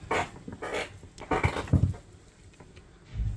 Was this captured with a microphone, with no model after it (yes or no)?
yes